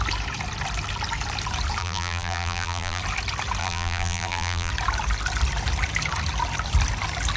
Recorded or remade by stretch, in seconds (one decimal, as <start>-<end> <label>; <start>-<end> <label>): 0.0-1.8 recorded; 1.8-3.0 remade; 3.0-3.6 recorded; 3.6-4.7 remade; 4.7-7.4 recorded